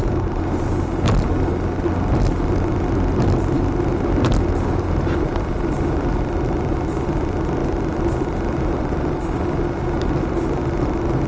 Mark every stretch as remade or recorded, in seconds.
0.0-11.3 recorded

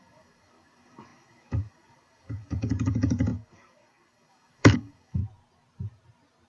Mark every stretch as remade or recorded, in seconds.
0.0-5.2 remade; 5.2-6.5 recorded

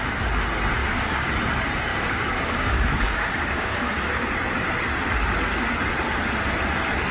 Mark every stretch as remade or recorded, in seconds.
0.0-0.8 recorded; 0.8-1.3 remade; 1.3-1.9 recorded; 1.9-4.1 remade; 4.1-7.1 recorded